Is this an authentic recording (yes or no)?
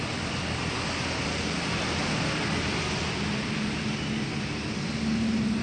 yes